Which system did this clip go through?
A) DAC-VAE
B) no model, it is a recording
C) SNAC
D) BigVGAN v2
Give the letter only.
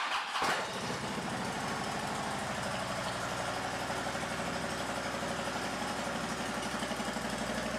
B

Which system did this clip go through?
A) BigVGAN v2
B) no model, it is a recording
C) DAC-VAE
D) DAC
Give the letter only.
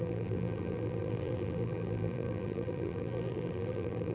A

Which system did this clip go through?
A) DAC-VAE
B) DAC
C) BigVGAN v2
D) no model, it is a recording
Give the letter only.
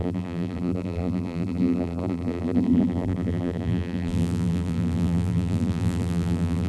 C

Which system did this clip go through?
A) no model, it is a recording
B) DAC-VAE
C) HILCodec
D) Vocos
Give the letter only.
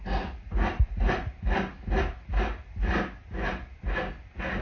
A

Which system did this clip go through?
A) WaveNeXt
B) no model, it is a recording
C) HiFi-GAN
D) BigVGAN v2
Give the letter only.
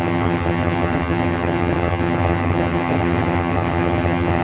C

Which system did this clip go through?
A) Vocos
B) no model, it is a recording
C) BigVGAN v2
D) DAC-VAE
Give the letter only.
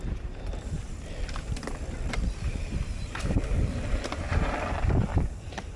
C